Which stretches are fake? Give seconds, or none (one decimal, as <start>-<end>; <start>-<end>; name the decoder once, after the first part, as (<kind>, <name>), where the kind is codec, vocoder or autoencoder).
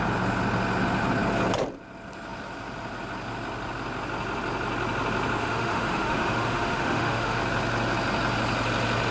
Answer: 5.4-7.4 (autoencoder, DAC-VAE)